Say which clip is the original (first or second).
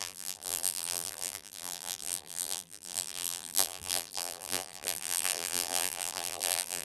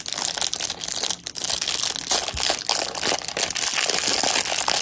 second